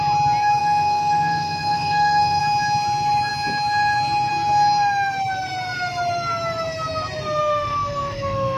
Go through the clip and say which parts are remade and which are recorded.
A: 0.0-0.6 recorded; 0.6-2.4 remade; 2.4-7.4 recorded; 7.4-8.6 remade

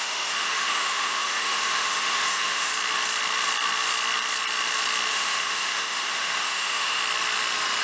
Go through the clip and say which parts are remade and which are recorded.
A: 0.0-2.7 remade; 2.7-5.1 recorded; 5.1-7.0 remade; 7.0-7.8 recorded

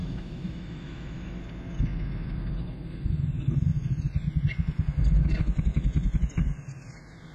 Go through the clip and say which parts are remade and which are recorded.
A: 0.0-1.4 remade; 1.4-7.3 recorded